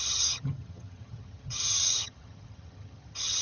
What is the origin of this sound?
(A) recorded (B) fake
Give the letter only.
B